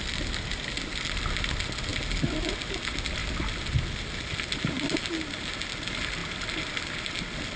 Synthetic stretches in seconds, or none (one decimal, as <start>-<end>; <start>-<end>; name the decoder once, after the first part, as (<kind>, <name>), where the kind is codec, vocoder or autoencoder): none

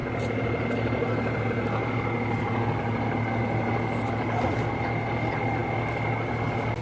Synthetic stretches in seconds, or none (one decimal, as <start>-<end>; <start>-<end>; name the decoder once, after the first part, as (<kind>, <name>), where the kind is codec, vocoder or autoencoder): none

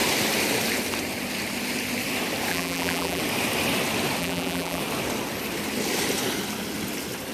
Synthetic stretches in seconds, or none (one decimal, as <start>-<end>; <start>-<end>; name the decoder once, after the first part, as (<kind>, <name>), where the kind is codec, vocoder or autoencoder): 2.5-3.2 (vocoder, BigVGAN v2); 4.2-4.8

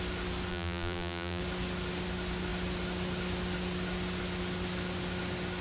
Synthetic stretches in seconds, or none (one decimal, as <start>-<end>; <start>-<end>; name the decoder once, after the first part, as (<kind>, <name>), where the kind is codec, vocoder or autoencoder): 0.5-1.4 (vocoder, BigVGAN v2)

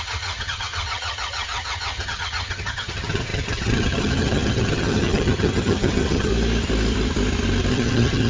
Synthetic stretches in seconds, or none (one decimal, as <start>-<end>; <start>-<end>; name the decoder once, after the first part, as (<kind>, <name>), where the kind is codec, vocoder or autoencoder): 0.0-6.3 (vocoder, HiFi-GAN); 7.7-8.3

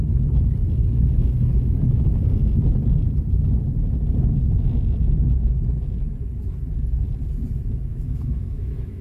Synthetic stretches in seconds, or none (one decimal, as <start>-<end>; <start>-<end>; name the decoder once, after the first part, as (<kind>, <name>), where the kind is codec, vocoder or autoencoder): 7.9-9.0 (autoencoder, DAC-VAE)

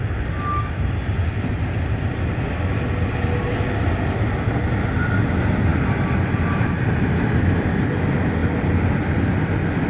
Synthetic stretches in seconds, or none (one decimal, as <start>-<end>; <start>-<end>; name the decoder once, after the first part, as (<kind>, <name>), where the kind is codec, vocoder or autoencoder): none